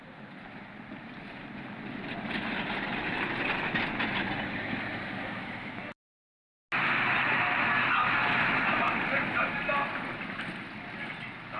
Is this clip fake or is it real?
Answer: real